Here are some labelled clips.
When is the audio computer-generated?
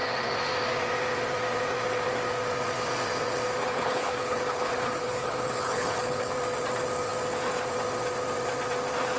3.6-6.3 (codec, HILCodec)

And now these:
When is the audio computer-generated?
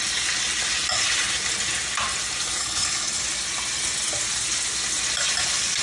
2.6-3.2 (codec, HILCodec)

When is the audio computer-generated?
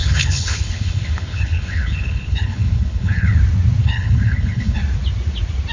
0.0-3.4 (codec, HILCodec); 3.8-4.8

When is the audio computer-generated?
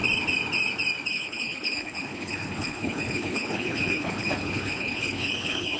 1.1-5.8 (codec, HILCodec)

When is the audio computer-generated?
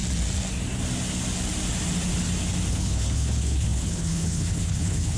2.7-5.2 (codec, HILCodec)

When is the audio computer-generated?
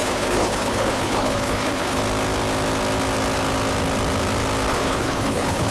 0.0-2.0 (codec, HILCodec); 4.7-5.7